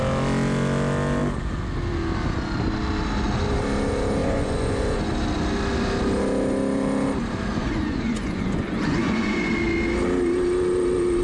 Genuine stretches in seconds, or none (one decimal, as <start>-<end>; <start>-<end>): 0.0-4.2; 5.1-7.5; 9.5-11.2